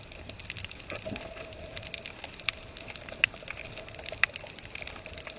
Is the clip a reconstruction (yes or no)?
no